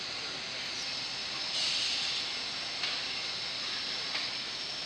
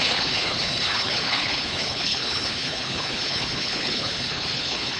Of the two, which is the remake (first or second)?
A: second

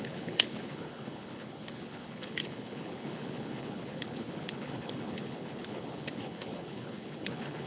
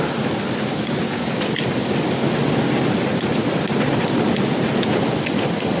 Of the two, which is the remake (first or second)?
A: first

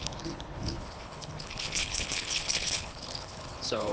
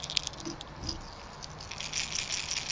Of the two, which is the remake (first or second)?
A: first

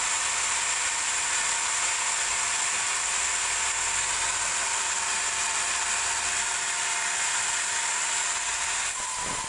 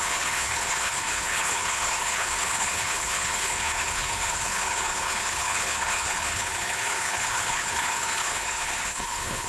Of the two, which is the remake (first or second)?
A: second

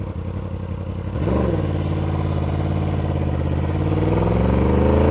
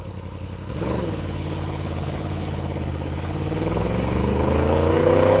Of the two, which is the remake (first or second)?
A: second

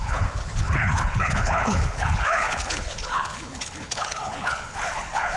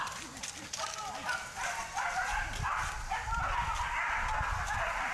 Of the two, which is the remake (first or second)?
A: first